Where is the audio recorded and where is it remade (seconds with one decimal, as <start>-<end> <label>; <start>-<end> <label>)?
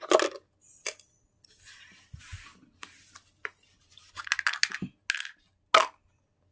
0.0-2.3 recorded; 2.3-4.2 remade; 4.2-6.5 recorded